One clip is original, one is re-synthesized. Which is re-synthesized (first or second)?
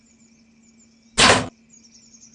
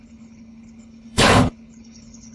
second